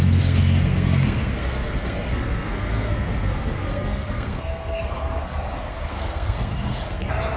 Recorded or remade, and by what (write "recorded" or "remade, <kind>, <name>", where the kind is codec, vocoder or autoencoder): remade, codec, SNAC